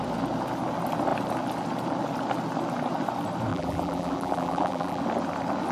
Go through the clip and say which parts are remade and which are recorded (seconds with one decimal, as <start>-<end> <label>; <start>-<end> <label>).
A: 0.0-3.5 recorded; 3.5-5.0 remade; 5.0-5.7 recorded